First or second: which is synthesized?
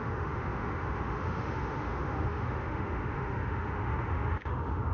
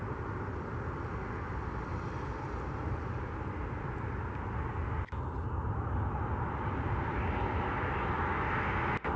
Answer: first